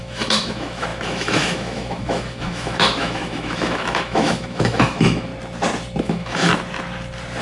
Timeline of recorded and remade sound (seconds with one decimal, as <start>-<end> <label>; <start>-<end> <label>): 0.0-5.3 remade; 5.3-6.0 recorded; 6.0-6.5 remade; 6.5-7.4 recorded